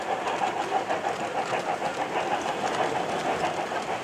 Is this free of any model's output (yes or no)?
yes